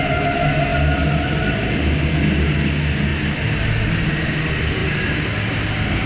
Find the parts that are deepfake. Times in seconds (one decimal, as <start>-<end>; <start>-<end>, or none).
none